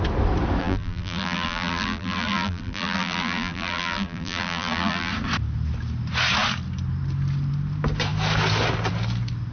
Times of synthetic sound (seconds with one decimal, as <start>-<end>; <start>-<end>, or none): 0.6-5.1